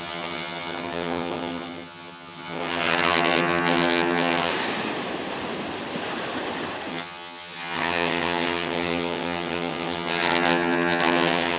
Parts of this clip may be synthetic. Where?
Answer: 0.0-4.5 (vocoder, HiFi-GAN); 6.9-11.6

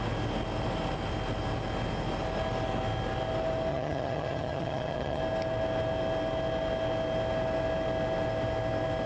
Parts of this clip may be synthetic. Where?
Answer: 3.7-5.2 (vocoder, HiFi-GAN)

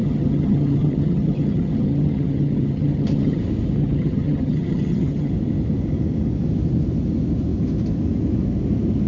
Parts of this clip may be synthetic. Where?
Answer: 0.0-3.4 (vocoder, HiFi-GAN); 3.8-5.3

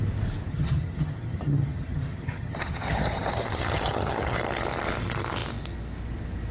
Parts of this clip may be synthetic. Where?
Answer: 0.5-4.4 (vocoder, HiFi-GAN)

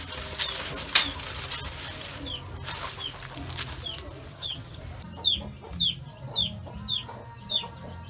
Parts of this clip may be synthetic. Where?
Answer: 4.3-4.8 (vocoder, HiFi-GAN)

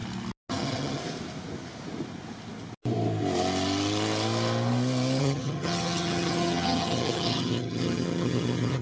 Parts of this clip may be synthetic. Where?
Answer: 0.5-1.0 (vocoder, HiFi-GAN); 5.2-8.8

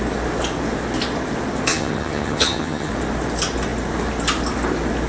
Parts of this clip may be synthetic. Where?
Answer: 1.7-2.9 (vocoder, HiFi-GAN)